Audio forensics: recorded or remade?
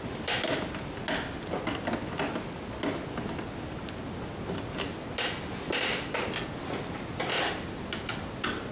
recorded